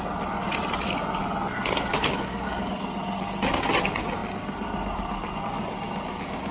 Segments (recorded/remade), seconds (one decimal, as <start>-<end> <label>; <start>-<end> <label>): 0.0-1.9 recorded; 1.9-2.7 remade; 2.7-6.5 recorded